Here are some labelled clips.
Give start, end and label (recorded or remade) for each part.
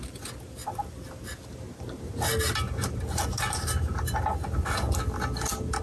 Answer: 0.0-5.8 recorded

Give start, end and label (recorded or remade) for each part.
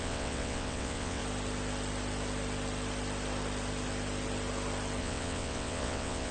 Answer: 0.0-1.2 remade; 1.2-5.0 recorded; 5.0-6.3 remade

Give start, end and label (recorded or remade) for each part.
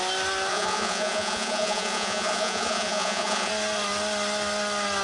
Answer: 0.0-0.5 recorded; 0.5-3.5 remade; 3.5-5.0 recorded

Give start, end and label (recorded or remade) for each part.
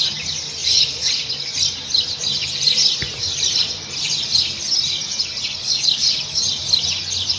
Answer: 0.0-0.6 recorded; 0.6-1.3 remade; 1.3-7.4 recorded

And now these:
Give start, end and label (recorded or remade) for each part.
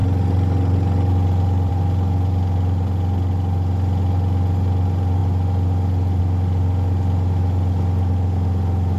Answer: 0.0-9.0 recorded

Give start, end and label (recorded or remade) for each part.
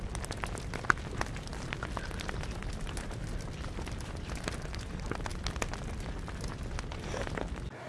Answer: 0.0-7.9 recorded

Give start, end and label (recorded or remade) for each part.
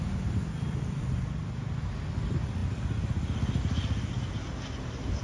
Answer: 0.0-5.2 recorded